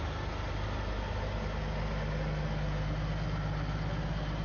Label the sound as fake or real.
real